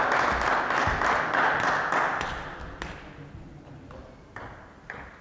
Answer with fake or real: real